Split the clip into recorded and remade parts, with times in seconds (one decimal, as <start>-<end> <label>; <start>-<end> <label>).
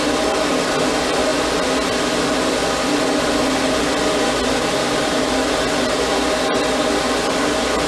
0.0-7.9 recorded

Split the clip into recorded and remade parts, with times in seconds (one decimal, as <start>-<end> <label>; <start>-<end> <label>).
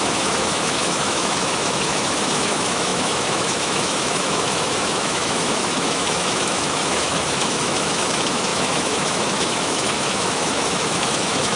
0.0-11.6 remade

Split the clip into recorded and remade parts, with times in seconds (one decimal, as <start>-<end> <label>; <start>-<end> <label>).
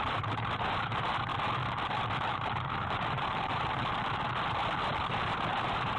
0.0-1.3 remade; 1.3-2.3 recorded; 2.3-3.9 remade; 3.9-5.1 recorded; 5.1-6.0 remade